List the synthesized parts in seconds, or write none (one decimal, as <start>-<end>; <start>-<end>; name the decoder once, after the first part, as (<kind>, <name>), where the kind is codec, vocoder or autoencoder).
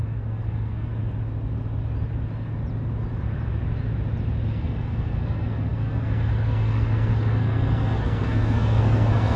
0.0-0.9 (codec, SNAC); 4.5-9.4